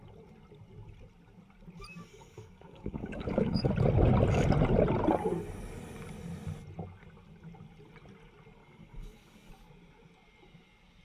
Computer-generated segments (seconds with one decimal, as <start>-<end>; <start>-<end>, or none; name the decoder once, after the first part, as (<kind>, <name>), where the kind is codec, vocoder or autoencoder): 2.1-3.7 (codec, DAC); 8.6-9.5